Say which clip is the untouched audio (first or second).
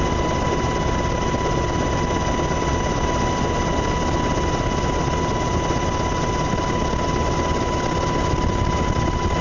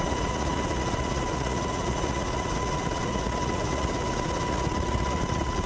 first